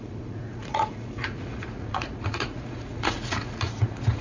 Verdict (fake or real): fake